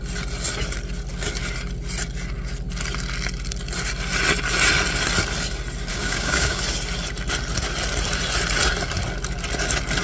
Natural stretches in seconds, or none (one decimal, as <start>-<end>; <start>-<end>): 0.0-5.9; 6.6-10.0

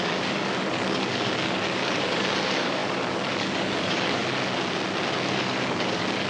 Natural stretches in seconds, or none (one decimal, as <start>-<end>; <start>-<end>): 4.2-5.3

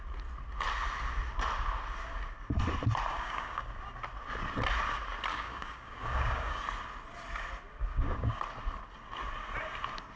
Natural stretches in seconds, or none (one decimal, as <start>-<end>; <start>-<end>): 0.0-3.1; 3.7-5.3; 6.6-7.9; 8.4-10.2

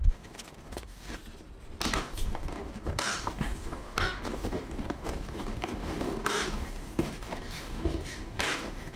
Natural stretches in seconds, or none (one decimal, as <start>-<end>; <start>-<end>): 1.2-1.9

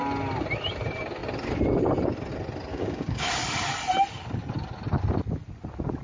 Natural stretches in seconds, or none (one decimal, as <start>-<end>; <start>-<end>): 0.0-2.7; 3.3-6.0

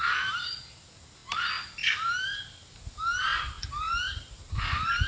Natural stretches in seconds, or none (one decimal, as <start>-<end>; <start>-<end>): 0.0-5.1

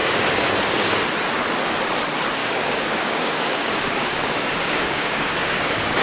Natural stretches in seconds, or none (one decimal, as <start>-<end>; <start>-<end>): 0.5-2.4

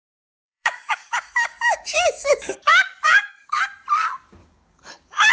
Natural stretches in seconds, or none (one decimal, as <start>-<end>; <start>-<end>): 0.0-0.4; 3.6-4.4